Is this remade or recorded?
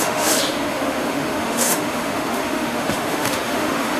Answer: remade